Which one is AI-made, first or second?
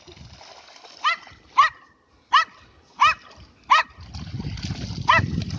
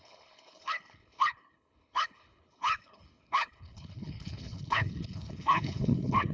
second